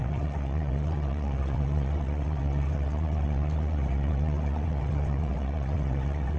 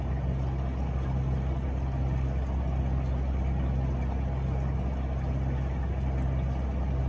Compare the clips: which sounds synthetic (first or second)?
first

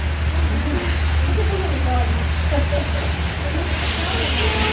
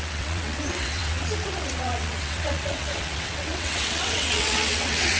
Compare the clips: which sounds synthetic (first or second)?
second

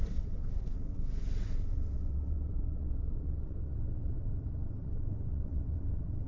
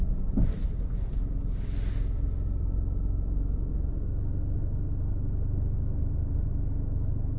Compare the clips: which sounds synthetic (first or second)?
first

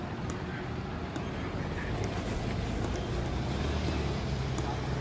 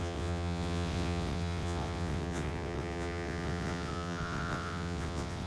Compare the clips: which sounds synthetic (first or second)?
second